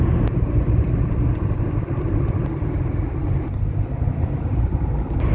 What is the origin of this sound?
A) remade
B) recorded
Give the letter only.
A